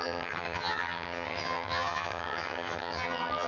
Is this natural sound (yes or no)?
no